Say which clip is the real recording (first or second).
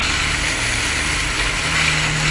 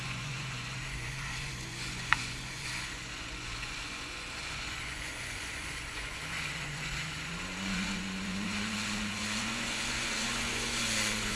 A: first